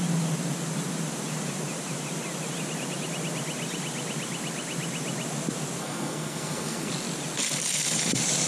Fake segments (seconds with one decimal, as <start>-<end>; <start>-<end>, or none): 5.8-6.9